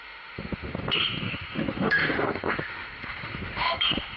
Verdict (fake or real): fake